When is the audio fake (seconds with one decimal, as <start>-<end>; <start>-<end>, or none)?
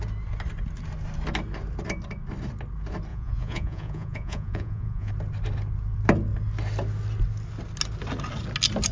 3.1-5.1